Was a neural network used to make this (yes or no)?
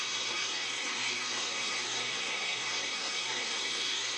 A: yes